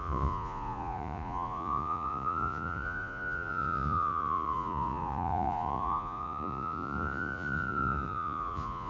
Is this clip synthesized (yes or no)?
yes